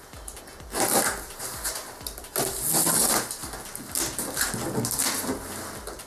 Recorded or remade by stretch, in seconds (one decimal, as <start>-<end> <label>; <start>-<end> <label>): 0.0-6.1 recorded